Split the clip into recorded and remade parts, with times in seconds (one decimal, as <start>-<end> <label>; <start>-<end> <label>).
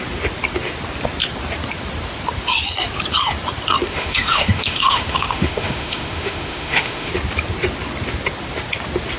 0.0-3.9 recorded; 3.9-7.1 remade; 7.1-9.2 recorded